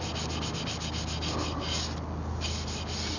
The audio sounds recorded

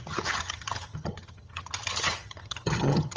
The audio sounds remade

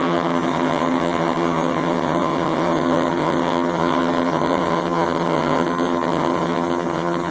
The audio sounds remade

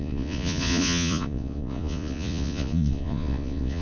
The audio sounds remade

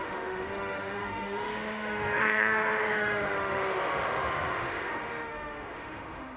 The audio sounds remade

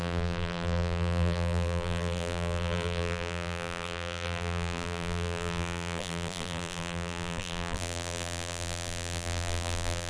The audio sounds remade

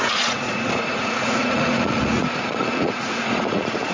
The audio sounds remade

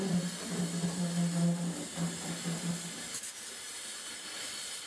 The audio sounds recorded